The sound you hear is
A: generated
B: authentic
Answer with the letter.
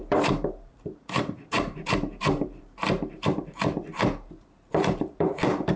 A